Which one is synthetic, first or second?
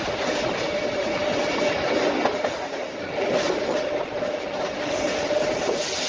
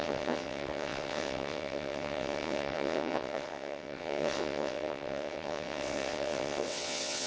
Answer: second